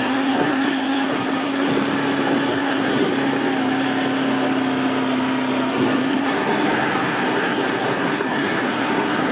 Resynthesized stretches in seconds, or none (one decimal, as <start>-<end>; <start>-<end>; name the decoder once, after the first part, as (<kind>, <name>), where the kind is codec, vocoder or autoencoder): 0.0-1.7 (codec, SNAC); 2.5-3.1; 5.7-9.3